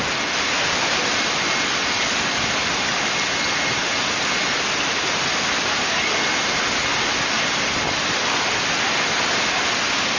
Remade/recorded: recorded